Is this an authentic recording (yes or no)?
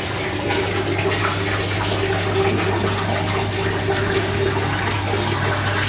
yes